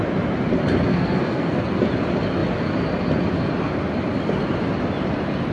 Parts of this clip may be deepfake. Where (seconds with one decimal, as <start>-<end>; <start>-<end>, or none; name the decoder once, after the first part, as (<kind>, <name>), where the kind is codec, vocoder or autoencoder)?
0.9-1.9 (codec, SNAC)